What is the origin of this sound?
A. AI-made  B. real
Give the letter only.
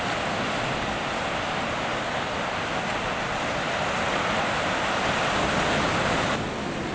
B